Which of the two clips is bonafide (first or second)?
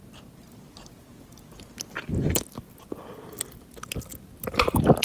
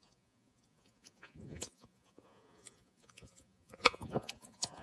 first